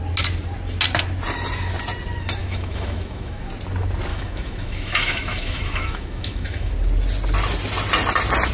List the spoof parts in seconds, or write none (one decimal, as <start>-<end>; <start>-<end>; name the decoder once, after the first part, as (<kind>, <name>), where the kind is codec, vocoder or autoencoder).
2.4-3.5 (autoencoder, DAC-VAE); 4.1-6.7